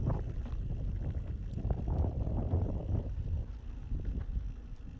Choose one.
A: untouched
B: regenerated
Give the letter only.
A